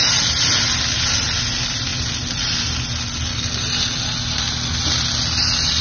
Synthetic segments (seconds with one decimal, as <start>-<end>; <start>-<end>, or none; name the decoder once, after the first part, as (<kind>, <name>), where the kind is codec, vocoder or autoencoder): none